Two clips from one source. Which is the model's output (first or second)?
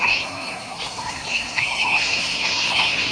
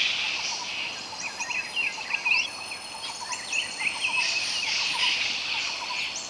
first